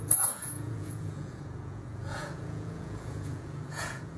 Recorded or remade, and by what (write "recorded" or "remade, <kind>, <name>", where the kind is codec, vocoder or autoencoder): remade, vocoder, Vocos